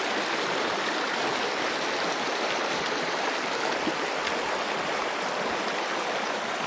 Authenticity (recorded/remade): recorded